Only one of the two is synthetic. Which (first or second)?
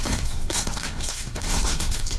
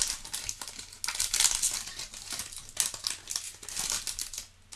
first